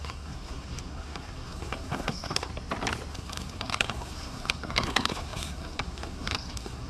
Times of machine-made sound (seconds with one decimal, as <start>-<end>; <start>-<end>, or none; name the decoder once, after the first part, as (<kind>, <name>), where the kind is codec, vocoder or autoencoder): 0.0-2.5 (codec, SNAC); 3.1-6.9